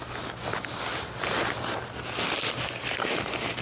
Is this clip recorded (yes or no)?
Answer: yes